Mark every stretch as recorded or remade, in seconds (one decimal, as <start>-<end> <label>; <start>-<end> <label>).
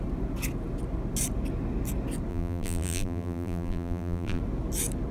0.0-2.3 recorded; 2.3-4.4 remade; 4.4-5.1 recorded